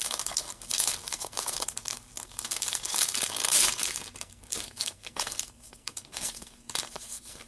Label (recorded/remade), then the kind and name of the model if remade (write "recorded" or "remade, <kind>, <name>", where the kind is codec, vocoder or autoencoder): remade, codec, SNAC